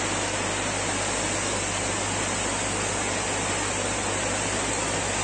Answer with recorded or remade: recorded